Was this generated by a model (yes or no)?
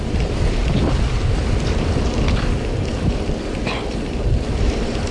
yes